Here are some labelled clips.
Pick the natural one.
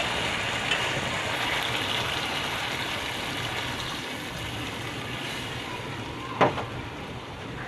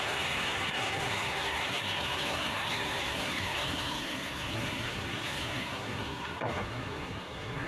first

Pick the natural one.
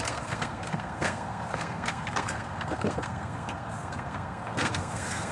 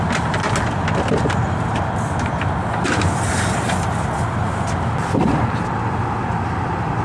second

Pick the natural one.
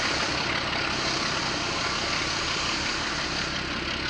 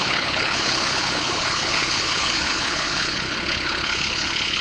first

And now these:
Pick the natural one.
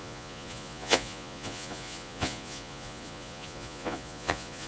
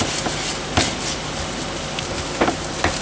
second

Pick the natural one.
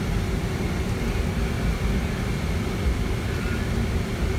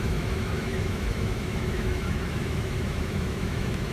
first